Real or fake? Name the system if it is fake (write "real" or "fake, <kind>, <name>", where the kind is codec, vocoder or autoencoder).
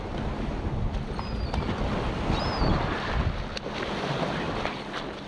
real